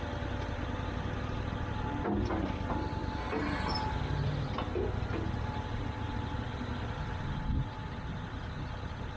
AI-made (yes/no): no